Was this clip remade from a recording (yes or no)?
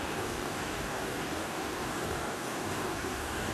yes